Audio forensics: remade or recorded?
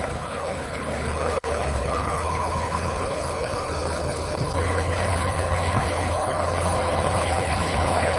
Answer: remade